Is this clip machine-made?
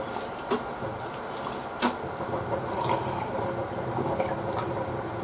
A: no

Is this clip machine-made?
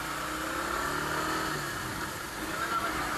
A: no